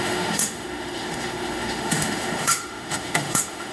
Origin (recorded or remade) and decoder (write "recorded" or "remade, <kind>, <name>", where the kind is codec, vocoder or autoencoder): remade, autoencoder, DAC-VAE